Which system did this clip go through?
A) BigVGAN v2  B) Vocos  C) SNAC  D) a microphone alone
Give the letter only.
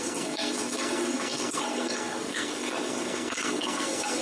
C